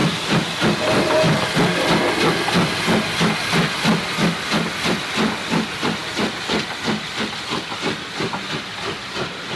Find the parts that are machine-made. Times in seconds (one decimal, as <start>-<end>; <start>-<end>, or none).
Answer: none